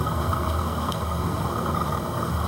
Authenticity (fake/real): fake